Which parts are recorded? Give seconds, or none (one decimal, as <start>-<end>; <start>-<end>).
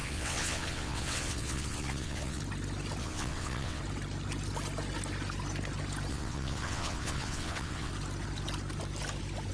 2.4-3.0; 3.8-6.1; 7.9-9.5